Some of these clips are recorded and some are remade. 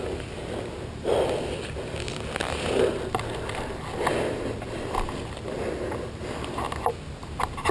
recorded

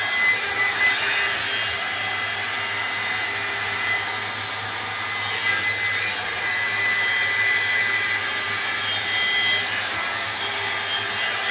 recorded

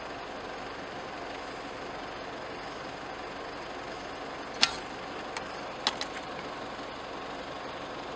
recorded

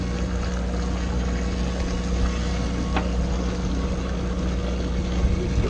recorded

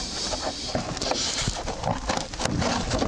recorded